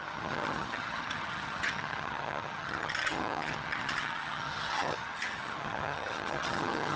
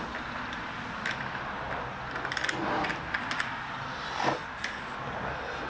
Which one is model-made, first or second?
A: first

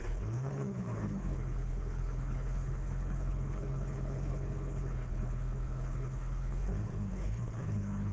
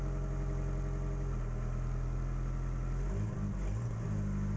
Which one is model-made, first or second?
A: first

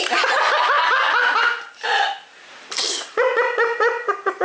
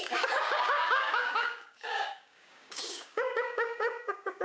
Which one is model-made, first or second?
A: second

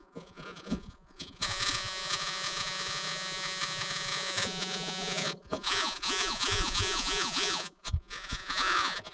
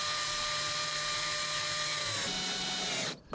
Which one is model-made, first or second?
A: first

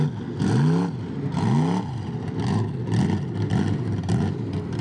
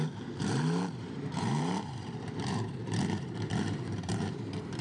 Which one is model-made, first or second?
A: second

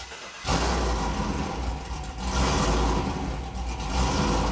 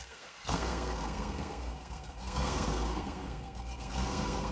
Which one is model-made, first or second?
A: second